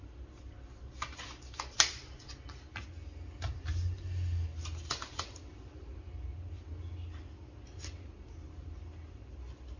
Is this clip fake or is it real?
real